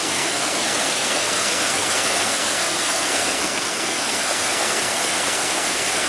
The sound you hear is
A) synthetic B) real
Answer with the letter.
A